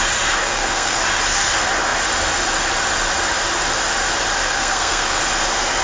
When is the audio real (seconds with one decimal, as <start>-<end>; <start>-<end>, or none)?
0.0-0.4; 1.0-4.4; 5.2-5.8